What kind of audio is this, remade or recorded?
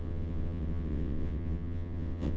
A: remade